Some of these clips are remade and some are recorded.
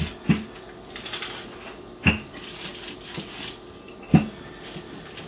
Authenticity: recorded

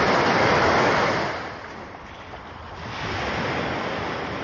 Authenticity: recorded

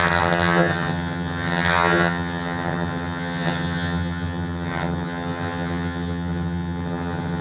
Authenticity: remade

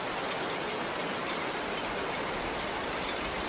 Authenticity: recorded